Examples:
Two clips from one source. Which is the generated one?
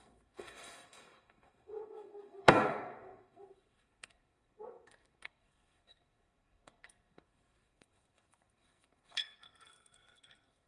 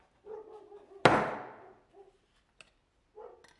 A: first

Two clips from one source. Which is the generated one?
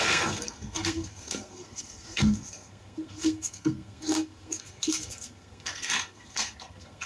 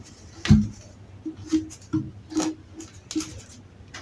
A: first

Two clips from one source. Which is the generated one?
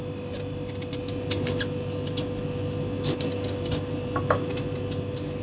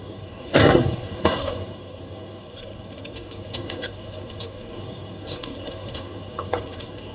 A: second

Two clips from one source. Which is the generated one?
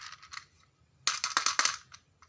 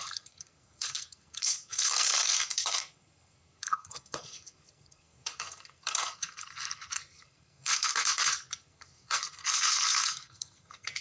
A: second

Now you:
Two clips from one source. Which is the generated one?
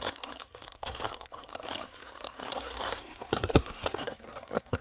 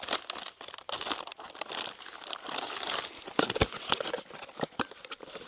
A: first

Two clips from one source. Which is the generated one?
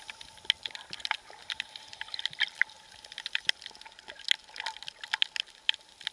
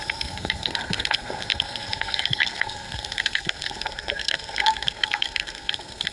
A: second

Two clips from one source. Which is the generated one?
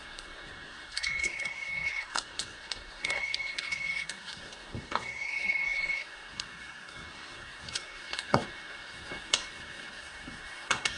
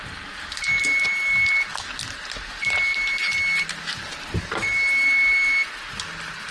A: first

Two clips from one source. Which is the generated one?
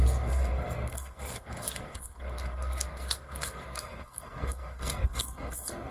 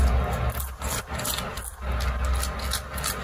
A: first